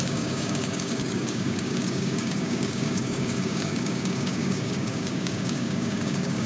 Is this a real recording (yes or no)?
no